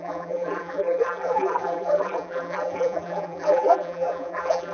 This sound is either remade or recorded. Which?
remade